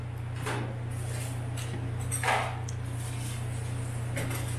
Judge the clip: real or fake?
real